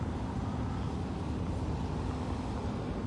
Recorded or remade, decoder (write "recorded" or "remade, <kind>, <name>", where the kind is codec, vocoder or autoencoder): recorded